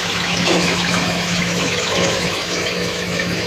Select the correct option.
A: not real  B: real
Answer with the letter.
A